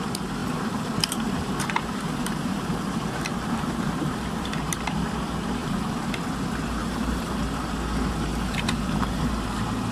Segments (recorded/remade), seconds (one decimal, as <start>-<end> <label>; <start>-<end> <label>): 0.0-0.4 recorded; 0.4-4.8 remade; 4.8-5.6 recorded; 5.6-6.1 remade; 6.1-6.8 recorded; 6.8-7.4 remade; 7.4-8.3 recorded; 8.3-9.3 remade; 9.3-9.9 recorded